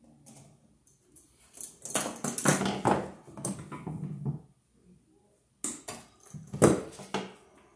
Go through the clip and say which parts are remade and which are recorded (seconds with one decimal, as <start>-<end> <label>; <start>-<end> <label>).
0.0-7.8 recorded

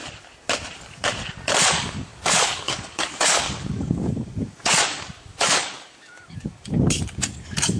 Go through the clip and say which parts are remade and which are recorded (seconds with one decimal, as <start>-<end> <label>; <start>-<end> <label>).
0.0-1.7 recorded; 1.7-7.8 remade